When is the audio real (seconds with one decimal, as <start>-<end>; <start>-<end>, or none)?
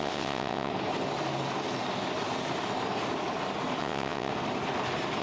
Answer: 0.7-3.8; 4.3-5.2